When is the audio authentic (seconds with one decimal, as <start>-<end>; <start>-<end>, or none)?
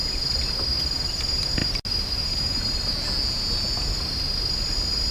0.0-5.1